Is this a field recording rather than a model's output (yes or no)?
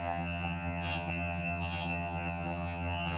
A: no